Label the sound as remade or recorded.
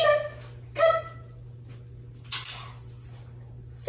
recorded